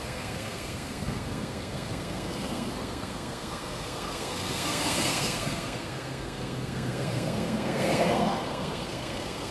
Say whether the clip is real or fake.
fake